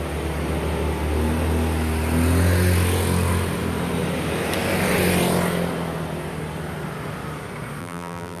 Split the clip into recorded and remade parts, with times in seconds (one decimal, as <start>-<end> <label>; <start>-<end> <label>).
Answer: 0.0-7.8 recorded; 7.8-8.4 remade